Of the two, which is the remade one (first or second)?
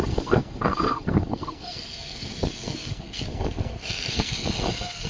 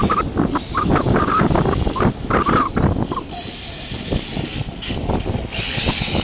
first